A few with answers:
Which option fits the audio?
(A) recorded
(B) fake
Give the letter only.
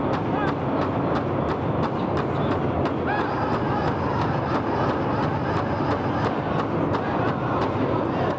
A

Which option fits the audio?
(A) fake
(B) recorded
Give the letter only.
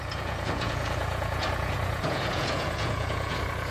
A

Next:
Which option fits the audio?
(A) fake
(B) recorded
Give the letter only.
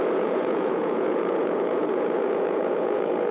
A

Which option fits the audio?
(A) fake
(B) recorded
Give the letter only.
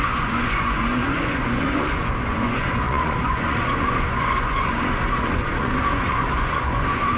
A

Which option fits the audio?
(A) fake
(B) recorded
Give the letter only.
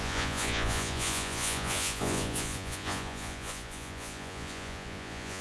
A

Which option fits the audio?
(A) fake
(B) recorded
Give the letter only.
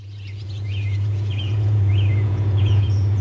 A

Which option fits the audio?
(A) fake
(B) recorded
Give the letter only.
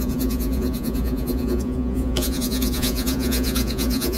A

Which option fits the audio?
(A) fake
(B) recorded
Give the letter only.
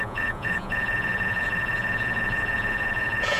A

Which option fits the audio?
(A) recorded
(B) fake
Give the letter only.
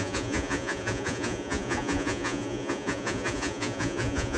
B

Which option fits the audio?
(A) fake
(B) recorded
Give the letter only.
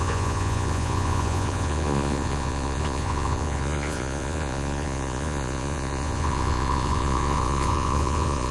A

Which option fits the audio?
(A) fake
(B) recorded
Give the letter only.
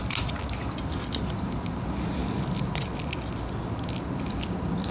B